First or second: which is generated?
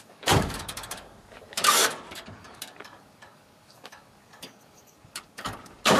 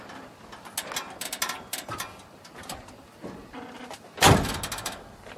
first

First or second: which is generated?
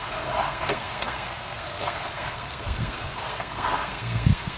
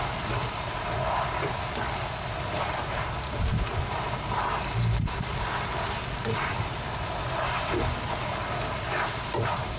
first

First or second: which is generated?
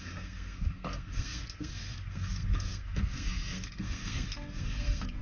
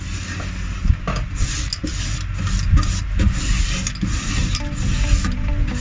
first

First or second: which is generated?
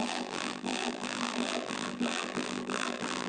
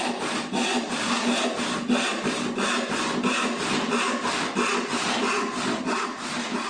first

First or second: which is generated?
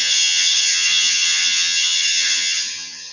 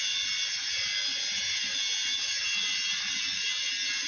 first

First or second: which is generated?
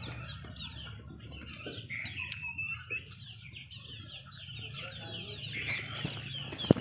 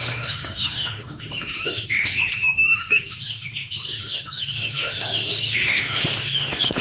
second